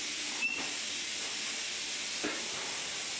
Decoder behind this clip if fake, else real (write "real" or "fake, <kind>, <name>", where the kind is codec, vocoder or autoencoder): real